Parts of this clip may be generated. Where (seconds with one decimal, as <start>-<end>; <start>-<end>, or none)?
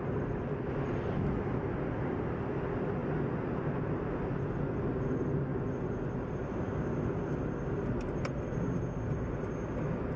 none